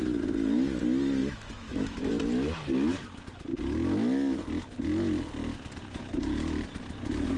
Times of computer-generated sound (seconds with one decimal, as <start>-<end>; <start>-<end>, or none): 1.2-2.1